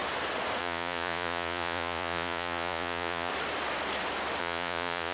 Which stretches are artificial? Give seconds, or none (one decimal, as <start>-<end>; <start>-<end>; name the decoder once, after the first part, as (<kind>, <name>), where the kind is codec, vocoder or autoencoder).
0.6-3.3 (vocoder, Vocos); 4.4-5.1